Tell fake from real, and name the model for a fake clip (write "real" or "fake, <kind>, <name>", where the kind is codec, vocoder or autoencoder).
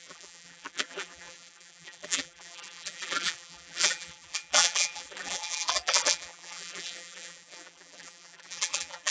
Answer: fake, vocoder, BigVGAN v2